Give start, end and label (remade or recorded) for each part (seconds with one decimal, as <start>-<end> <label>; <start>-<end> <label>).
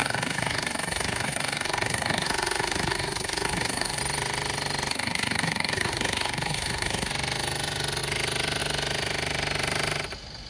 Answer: 0.0-4.0 remade; 4.0-4.9 recorded; 4.9-7.1 remade; 7.1-10.5 recorded